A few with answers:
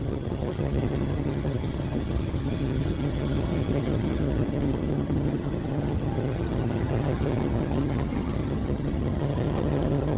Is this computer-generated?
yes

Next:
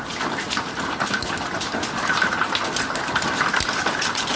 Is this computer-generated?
no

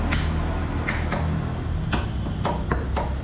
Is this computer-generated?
no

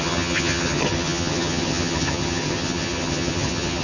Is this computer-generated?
yes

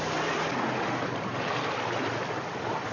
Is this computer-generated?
no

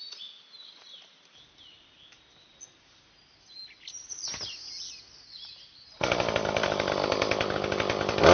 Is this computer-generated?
no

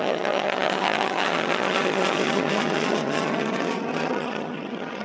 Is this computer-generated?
yes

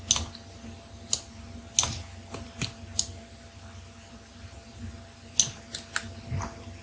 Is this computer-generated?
no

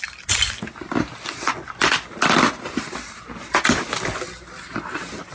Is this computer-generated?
no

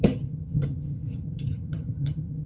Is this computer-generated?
yes